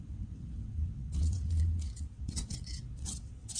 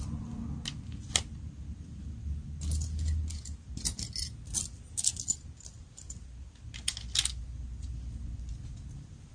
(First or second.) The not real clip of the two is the first